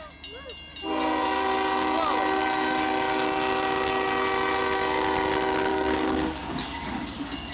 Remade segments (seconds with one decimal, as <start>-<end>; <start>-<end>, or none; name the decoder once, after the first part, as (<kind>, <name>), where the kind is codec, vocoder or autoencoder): 5.7-7.5 (codec, DAC)

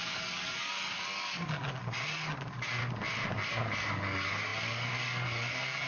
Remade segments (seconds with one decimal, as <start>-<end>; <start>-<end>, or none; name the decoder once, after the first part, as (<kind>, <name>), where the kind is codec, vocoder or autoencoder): 0.0-2.8 (codec, DAC); 3.5-5.9

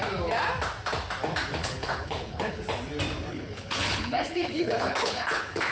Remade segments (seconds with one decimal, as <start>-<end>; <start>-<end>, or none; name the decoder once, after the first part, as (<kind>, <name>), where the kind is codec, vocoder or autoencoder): 1.6-2.6 (codec, HILCodec); 3.3-5.7

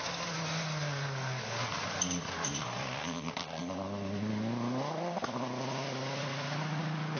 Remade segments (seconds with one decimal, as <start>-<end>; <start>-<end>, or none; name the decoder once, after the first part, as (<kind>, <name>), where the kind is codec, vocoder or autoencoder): 1.7-2.9 (vocoder, BigVGAN v2)

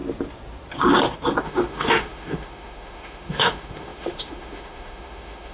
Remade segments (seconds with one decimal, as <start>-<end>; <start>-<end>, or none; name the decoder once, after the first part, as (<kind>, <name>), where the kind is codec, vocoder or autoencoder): 1.4-5.5 (autoencoder, DAC-VAE)

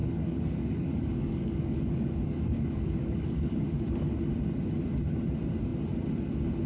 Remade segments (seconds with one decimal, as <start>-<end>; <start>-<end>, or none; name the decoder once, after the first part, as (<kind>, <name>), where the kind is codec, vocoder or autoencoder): 0.0-4.0 (codec, DAC)

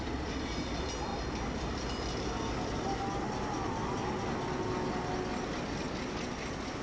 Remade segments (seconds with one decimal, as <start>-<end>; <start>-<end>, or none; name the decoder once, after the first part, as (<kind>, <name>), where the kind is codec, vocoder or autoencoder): none